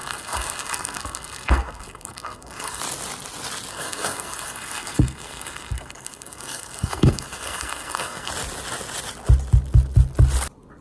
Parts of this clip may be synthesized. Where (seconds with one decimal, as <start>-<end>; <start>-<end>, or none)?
0.0-2.8; 3.7-8.3